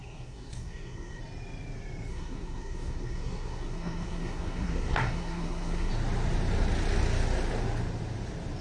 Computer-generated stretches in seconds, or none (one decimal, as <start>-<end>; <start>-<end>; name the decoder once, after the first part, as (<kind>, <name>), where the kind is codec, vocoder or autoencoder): 0.0-1.2 (codec, SNAC); 2.1-5.9